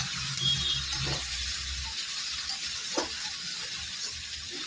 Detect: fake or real real